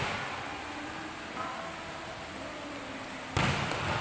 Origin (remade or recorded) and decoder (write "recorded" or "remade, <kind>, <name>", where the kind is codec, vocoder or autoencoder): recorded